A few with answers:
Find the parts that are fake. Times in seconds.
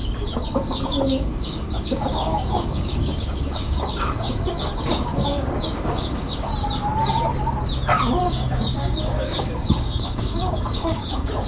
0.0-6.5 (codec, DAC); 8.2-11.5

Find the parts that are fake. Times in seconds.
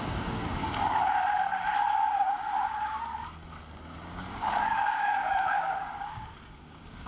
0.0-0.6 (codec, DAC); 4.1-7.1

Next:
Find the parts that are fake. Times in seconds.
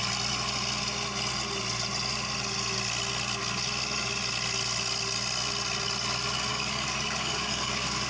6.5-8.1 (codec, DAC)